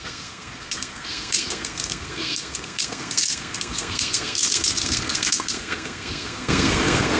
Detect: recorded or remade remade